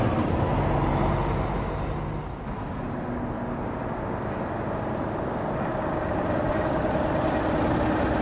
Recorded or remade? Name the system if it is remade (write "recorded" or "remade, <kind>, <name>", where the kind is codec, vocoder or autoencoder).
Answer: recorded